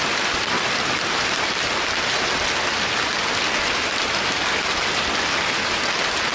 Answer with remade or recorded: recorded